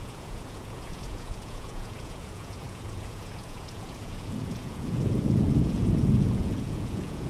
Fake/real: fake